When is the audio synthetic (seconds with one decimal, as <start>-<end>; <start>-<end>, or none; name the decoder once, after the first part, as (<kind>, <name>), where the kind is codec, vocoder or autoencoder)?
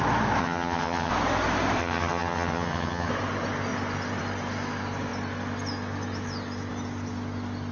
0.4-1.1 (vocoder, HiFi-GAN); 1.8-3.1